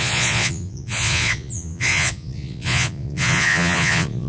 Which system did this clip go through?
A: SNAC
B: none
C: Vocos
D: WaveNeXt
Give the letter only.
C